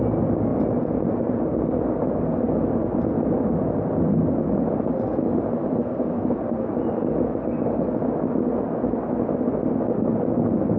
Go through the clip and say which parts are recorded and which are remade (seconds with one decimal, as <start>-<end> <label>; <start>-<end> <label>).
0.0-5.8 recorded; 5.8-6.7 remade; 6.7-10.8 recorded